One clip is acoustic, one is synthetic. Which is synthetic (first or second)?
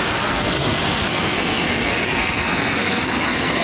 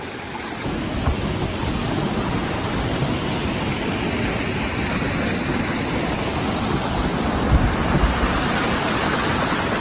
first